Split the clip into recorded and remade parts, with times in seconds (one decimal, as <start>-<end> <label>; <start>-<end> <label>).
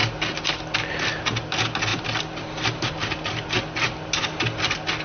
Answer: 0.0-1.1 remade; 1.1-1.9 recorded; 1.9-5.0 remade